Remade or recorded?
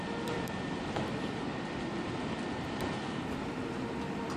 remade